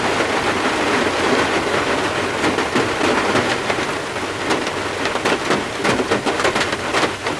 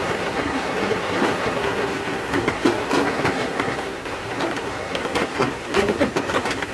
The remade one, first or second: second